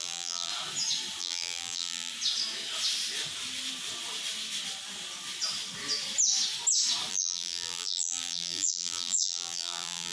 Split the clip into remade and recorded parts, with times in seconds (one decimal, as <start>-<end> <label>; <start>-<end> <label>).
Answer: 0.0-0.5 remade; 0.5-1.2 recorded; 1.2-2.1 remade; 2.1-7.1 recorded; 7.1-10.1 remade